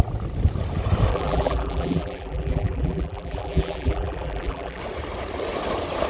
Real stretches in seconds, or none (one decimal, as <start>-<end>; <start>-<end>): 0.0-1.1; 4.8-6.1